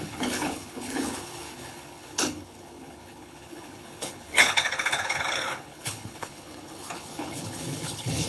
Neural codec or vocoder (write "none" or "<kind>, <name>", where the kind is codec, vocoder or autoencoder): codec, HILCodec